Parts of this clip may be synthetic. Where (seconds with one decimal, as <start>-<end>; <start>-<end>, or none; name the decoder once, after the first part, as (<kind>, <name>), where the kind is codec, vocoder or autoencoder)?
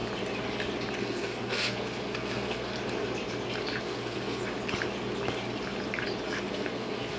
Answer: 1.0-2.7 (codec, SNAC); 3.8-4.4; 6.5-7.2